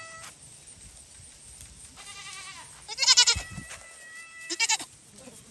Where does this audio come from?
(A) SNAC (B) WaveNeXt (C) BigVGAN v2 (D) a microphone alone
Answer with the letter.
D